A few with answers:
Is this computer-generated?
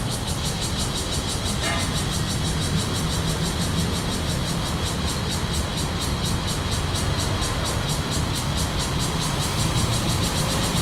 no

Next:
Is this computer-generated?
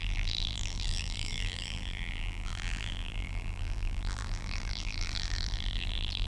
yes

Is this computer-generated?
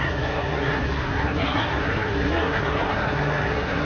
yes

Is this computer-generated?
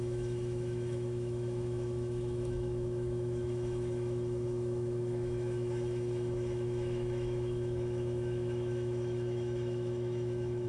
yes